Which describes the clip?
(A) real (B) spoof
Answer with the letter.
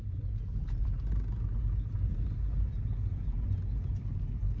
A